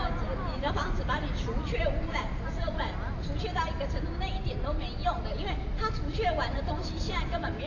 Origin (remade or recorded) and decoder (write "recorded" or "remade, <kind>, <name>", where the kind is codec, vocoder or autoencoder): recorded